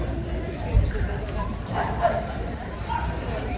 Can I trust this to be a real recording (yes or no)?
no